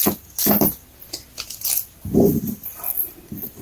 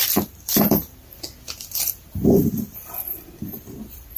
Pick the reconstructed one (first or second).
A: second